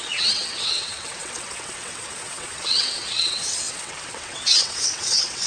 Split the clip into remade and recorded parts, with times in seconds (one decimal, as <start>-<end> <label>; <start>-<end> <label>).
0.0-5.5 remade